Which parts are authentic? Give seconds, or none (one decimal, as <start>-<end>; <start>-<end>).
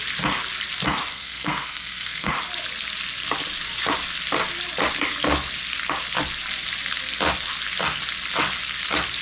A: 0.0-1.1; 2.3-9.2